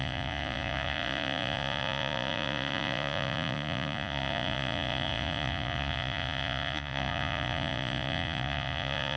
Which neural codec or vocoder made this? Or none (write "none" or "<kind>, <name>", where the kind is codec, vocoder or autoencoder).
vocoder, Vocos